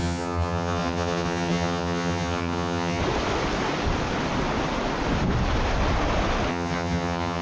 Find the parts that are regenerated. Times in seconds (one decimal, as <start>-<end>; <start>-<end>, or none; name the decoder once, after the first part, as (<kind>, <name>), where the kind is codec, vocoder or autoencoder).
0.0-3.0 (vocoder, HiFi-GAN); 6.5-7.4